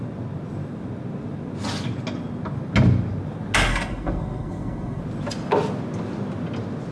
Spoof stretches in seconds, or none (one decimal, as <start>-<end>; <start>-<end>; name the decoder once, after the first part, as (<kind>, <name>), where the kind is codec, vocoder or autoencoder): 3.7-5.0 (codec, SNAC)